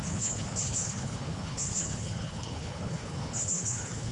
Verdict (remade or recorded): remade